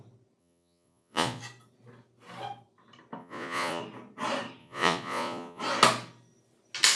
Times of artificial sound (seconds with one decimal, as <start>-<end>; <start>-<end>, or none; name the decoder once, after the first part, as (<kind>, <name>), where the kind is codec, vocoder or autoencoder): 0.4-1.4 (vocoder, Vocos); 3.2-3.8; 4.6-5.6